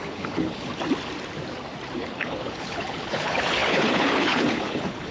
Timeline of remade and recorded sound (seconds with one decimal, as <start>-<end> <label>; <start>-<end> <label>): 0.0-0.7 remade; 0.7-2.0 recorded; 2.0-5.1 remade